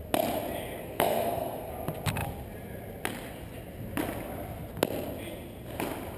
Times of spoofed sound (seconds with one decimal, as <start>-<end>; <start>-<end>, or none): 0.8-1.7